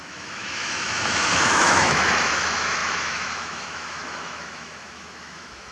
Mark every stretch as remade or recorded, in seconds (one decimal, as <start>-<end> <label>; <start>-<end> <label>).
0.0-5.7 remade